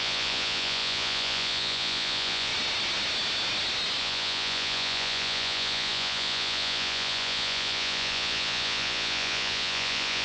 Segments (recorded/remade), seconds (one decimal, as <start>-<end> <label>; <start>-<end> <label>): 0.0-2.5 remade; 2.5-4.0 recorded; 4.0-10.2 remade